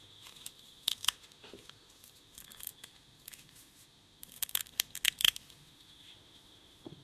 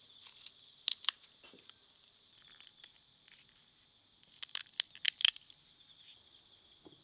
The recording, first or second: second